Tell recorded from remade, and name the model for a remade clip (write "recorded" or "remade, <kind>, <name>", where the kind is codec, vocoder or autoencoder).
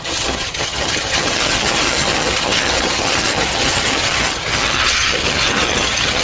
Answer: remade, vocoder, HiFi-GAN